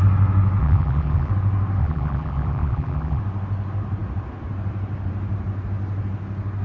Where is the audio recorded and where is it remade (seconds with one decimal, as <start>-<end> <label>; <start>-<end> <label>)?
0.0-0.6 recorded; 0.6-1.3 remade; 1.3-1.8 recorded; 1.8-3.2 remade; 3.2-6.6 recorded